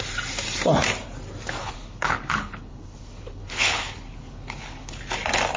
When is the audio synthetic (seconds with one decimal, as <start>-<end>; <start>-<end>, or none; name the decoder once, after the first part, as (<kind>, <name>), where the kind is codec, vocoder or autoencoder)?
1.6-5.0 (codec, HILCodec)